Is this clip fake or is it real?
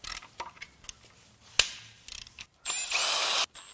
real